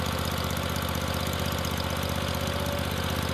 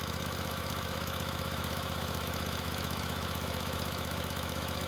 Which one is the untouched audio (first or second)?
first